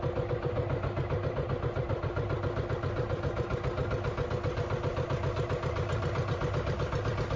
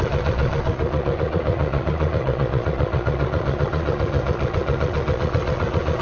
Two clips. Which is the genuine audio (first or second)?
first